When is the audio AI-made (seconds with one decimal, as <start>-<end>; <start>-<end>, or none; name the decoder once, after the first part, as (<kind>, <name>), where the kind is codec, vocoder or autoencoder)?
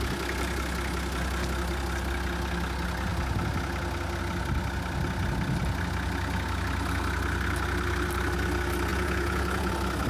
8.9-9.7 (vocoder, Vocos)